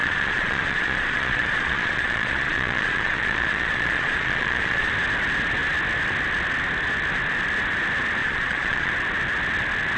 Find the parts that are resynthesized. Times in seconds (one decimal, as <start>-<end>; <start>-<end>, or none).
0.0-4.9; 8.2-8.9